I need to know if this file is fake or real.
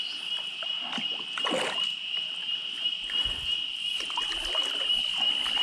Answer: real